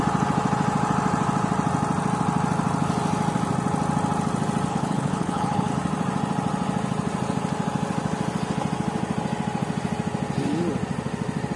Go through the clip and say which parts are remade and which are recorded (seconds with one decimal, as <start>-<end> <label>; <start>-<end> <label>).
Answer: 0.0-4.7 recorded; 4.7-5.7 remade; 5.7-11.6 recorded

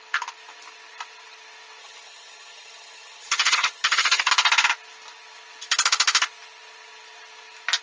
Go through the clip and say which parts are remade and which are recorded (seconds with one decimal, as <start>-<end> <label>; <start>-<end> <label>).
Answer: 0.0-1.8 recorded; 1.8-4.3 remade; 4.3-7.8 recorded

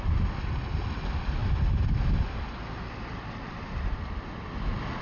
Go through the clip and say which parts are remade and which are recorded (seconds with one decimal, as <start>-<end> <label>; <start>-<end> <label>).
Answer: 0.0-5.0 recorded

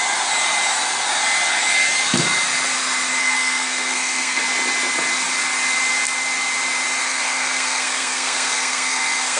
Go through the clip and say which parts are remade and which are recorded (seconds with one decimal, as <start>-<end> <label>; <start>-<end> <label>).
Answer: 0.0-3.2 recorded; 3.2-4.4 remade; 4.4-7.0 recorded; 7.0-9.4 remade

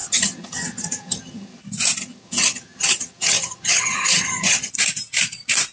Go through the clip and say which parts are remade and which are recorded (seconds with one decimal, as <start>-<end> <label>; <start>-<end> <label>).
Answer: 0.0-1.6 remade; 1.6-2.0 recorded; 2.0-4.7 remade; 4.7-5.7 recorded

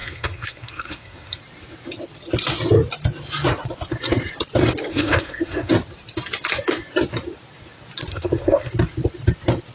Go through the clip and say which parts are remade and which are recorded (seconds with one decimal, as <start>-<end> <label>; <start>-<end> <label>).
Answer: 0.0-1.4 remade; 1.4-4.9 recorded; 4.9-5.7 remade; 5.7-8.1 recorded; 8.1-8.7 remade; 8.7-9.7 recorded

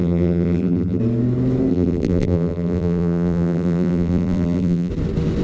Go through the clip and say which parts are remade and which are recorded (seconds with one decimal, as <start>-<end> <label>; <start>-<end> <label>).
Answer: 0.0-1.0 remade; 1.0-1.7 recorded; 1.7-4.9 remade; 4.9-5.4 recorded